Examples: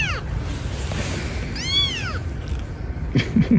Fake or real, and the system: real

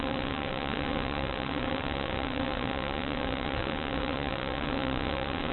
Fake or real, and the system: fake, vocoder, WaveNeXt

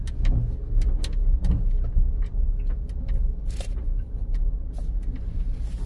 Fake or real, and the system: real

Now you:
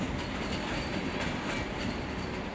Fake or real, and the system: real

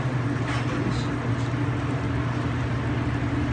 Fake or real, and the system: real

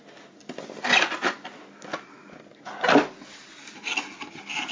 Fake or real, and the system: real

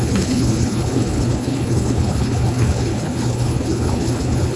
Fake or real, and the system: fake, codec, HILCodec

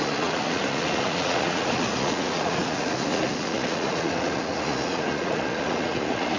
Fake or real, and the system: fake, vocoder, Vocos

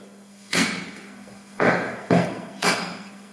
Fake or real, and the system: fake, codec, SNAC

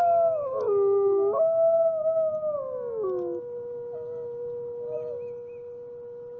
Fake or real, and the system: real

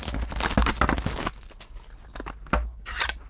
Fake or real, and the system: real